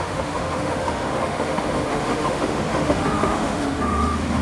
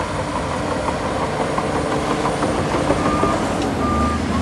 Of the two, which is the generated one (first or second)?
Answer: first